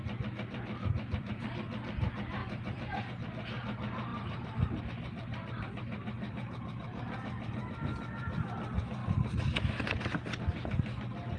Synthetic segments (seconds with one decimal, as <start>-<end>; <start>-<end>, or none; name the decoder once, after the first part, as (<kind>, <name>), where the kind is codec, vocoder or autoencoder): 0.0-9.0 (vocoder, BigVGAN v2); 10.4-11.4